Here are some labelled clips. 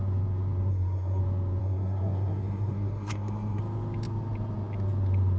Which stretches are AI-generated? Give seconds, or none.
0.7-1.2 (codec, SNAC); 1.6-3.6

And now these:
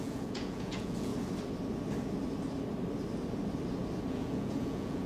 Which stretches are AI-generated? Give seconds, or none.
0.0-1.1 (vocoder, Vocos); 4.1-5.1

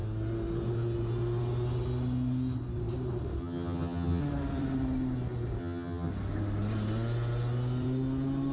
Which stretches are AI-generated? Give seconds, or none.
3.4-4.2 (vocoder, HiFi-GAN); 5.6-6.1

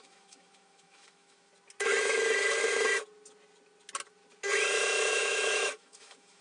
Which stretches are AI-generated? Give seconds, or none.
0.0-1.5 (autoencoder, DAC-VAE); 5.1-6.4

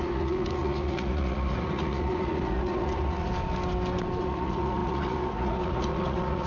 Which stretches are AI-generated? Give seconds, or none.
0.0-3.3 (vocoder, Vocos); 4.2-6.5

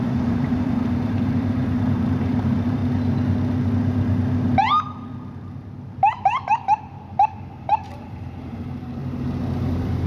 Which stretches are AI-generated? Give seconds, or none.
0.0-2.8 (vocoder, BigVGAN v2); 7.6-9.0; 9.6-10.1

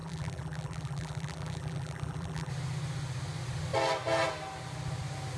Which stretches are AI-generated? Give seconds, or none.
0.0-2.5 (vocoder, BigVGAN v2)

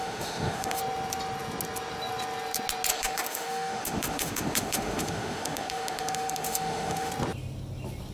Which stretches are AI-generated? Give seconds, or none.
0.0-0.8 (autoencoder, DAC-VAE); 2.9-7.1